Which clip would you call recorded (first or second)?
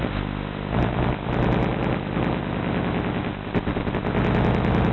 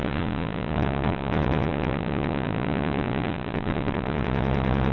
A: first